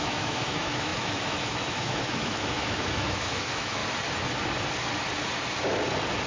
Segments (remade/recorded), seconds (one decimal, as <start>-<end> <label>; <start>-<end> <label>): 0.0-3.8 remade; 3.8-6.3 recorded